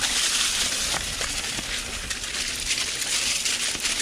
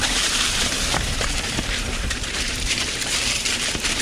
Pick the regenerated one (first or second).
second